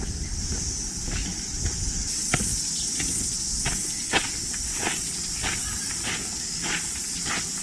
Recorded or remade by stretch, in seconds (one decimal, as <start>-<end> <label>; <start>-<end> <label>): 0.0-7.6 recorded